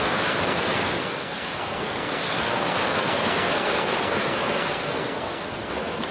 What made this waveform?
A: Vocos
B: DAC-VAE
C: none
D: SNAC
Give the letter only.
D